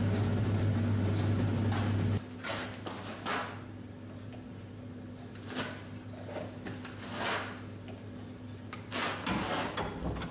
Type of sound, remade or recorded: recorded